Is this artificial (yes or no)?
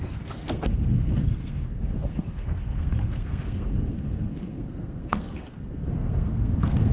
yes